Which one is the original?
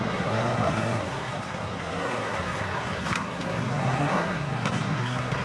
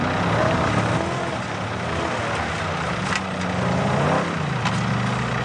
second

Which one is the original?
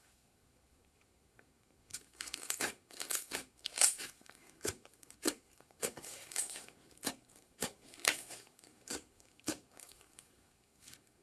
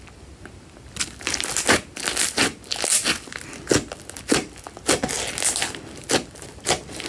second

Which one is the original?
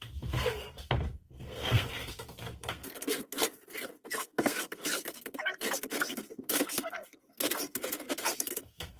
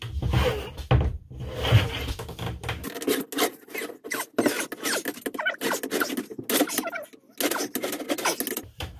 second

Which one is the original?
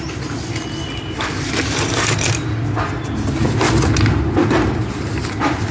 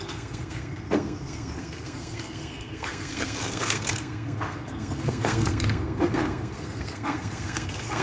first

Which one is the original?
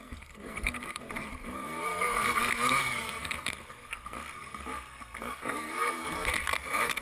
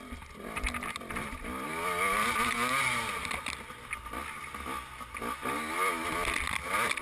second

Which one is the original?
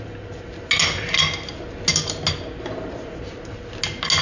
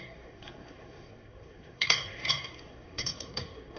first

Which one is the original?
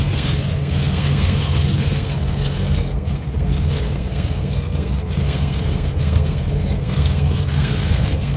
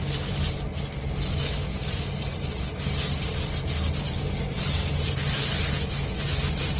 second